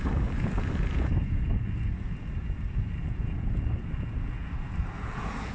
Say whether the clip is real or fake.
fake